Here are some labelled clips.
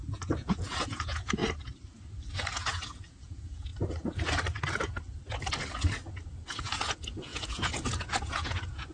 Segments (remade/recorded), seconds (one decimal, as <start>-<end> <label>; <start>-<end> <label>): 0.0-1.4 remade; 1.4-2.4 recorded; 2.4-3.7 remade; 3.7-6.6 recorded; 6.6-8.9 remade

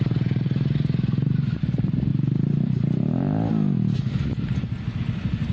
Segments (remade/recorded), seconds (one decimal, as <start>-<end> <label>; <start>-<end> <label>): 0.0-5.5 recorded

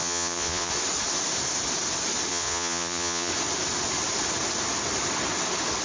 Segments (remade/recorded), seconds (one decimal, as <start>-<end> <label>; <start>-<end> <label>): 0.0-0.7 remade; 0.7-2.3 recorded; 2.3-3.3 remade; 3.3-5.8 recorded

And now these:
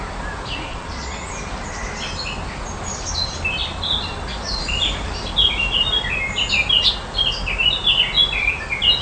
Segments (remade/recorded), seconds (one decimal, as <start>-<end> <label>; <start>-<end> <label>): 0.0-0.7 recorded; 0.7-1.3 remade; 1.3-9.0 recorded